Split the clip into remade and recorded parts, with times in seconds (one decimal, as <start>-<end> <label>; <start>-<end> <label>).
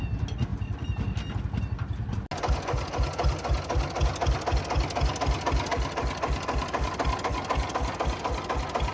0.0-8.9 recorded